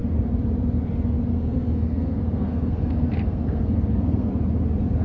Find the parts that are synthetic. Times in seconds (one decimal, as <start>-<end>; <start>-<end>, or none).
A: 1.3-4.3